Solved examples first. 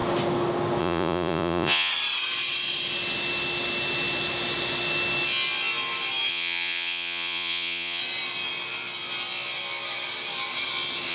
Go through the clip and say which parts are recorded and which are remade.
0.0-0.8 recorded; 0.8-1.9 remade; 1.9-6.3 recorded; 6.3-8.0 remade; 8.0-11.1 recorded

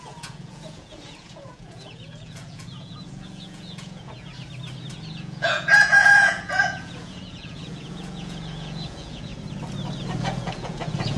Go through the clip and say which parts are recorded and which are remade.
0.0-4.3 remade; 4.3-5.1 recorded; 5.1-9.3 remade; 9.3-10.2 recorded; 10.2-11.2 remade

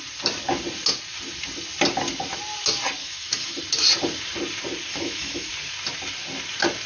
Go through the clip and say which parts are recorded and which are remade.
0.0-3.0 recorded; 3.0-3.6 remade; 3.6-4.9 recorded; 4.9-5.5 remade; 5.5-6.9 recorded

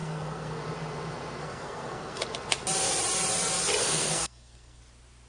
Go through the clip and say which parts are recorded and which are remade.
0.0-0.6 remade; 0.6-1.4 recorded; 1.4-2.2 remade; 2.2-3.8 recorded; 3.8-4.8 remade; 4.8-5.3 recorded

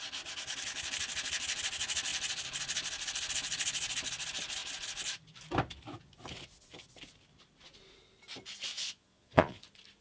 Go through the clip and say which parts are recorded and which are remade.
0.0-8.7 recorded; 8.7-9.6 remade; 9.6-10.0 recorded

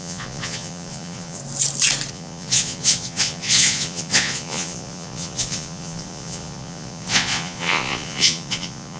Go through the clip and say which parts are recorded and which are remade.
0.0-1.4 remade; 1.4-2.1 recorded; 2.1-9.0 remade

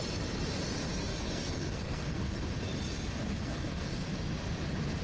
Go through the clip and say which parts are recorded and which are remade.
0.0-1.1 recorded; 1.1-2.4 remade; 2.4-3.4 recorded; 3.4-3.9 remade; 3.9-5.0 recorded

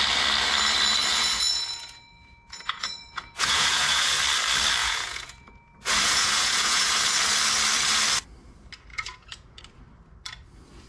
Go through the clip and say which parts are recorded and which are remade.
0.0-1.1 recorded; 1.1-4.2 remade; 4.2-4.8 recorded; 4.8-7.0 remade; 7.0-8.9 recorded; 8.9-9.6 remade; 9.6-10.9 recorded